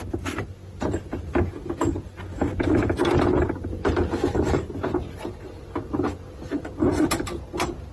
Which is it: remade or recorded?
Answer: recorded